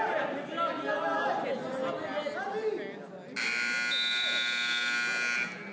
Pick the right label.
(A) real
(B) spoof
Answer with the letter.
A